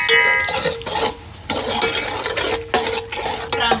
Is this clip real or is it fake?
real